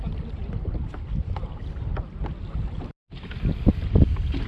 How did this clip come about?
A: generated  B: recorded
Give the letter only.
B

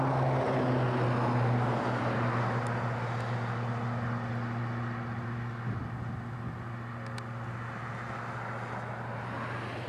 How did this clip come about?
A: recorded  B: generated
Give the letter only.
A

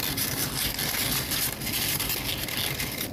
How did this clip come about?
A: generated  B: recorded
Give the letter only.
B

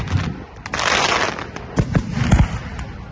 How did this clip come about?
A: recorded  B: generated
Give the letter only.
A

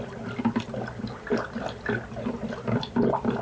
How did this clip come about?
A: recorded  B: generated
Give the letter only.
A